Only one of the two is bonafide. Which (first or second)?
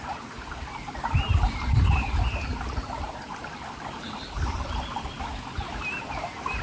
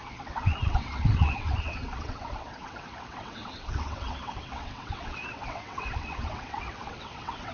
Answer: first